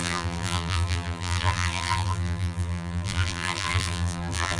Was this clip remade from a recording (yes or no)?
yes